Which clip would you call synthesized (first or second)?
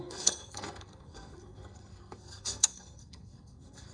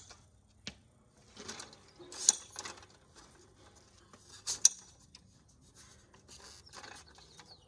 first